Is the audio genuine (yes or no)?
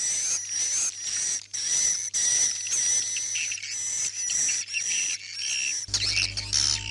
yes